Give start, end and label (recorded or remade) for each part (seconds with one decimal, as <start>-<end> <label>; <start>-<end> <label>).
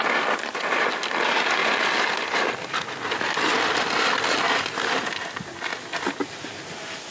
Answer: 0.0-5.7 recorded; 5.7-6.3 remade; 6.3-7.1 recorded